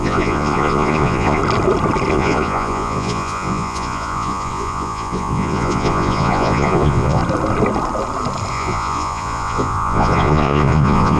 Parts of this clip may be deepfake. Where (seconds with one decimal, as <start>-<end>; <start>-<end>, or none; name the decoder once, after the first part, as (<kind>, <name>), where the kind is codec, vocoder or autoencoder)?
0.0-1.4 (vocoder, Vocos); 2.1-7.2; 8.5-11.2